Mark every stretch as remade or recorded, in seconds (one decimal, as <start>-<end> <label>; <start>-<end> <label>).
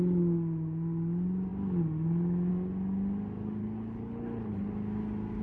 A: 0.0-3.6 recorded; 3.6-4.7 remade; 4.7-5.4 recorded